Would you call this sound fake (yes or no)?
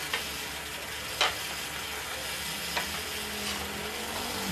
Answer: no